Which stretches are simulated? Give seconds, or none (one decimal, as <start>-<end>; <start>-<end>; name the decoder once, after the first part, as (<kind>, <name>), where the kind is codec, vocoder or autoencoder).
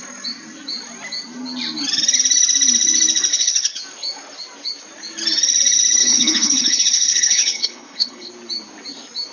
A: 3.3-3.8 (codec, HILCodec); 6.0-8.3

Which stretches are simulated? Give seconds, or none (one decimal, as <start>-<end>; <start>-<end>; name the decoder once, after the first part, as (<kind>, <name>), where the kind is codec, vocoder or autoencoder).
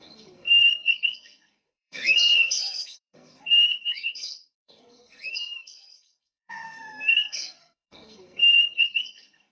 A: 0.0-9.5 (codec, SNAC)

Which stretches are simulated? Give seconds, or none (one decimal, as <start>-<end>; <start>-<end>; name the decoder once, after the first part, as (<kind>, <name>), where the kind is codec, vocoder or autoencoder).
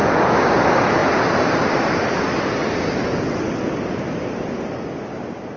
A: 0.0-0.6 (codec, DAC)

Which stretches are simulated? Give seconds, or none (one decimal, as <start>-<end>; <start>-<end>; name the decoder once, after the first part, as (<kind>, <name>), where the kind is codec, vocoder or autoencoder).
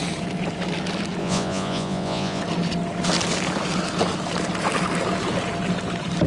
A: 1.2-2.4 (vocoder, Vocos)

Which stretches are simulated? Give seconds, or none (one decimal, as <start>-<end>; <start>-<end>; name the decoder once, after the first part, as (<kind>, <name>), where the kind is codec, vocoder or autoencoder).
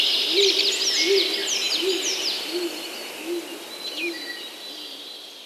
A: none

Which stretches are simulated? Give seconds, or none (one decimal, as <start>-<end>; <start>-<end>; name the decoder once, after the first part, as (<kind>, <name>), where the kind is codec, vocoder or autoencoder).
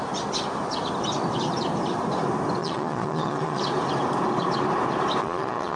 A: 2.6-3.6 (vocoder, Vocos); 5.2-5.8